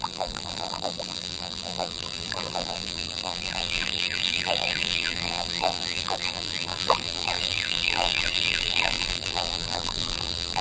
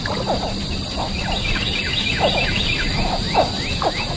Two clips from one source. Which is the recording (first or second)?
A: second